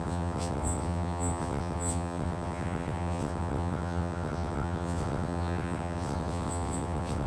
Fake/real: fake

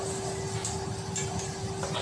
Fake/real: real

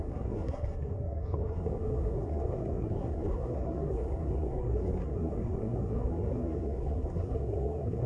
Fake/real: fake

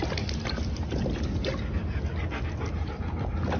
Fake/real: real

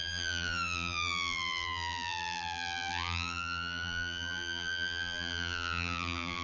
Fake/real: fake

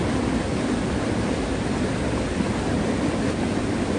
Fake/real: real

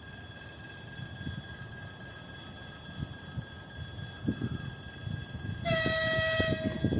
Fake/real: real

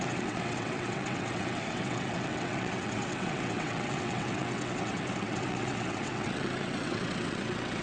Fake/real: fake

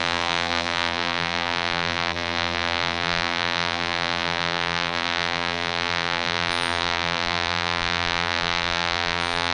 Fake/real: fake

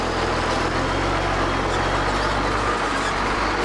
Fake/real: real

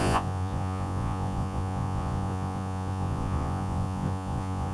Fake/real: fake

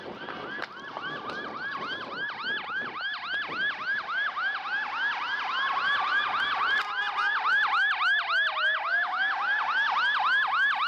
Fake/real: real